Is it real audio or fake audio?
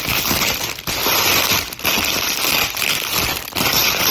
real